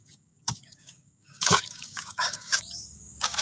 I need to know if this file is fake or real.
fake